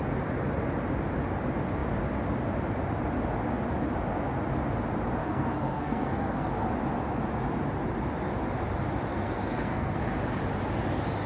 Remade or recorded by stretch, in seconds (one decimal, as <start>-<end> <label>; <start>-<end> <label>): 0.0-5.2 recorded; 5.2-6.5 remade; 6.5-9.1 recorded; 9.1-10.0 remade; 10.0-11.3 recorded